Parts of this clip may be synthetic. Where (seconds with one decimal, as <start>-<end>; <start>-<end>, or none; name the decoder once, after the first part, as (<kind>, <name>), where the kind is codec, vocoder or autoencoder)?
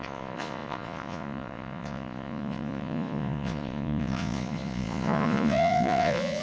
0.0-6.4 (vocoder, Vocos)